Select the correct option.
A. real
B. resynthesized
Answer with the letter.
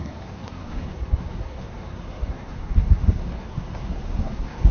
B